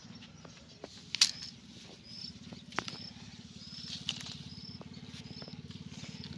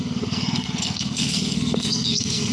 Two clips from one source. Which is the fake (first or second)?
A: second